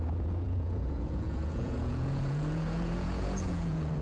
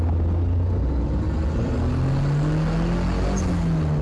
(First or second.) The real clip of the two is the second